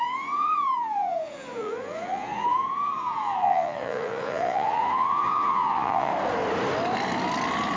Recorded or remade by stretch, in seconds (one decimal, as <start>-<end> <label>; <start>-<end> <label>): 0.0-6.1 remade; 6.1-7.8 recorded